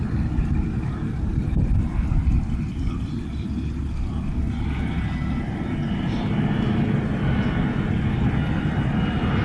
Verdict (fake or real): real